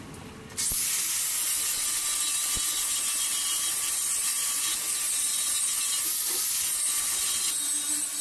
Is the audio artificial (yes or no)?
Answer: no